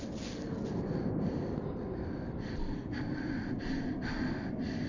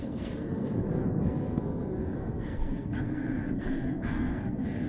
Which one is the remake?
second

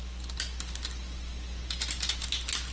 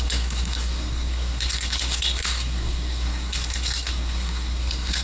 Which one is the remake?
second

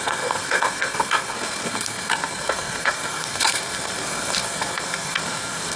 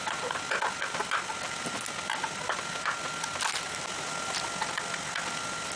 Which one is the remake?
first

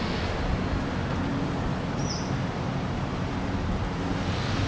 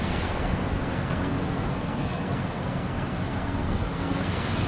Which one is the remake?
second